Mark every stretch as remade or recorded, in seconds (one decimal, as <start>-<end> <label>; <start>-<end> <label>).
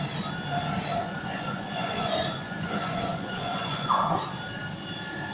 0.0-1.0 recorded; 1.0-4.2 remade; 4.2-5.3 recorded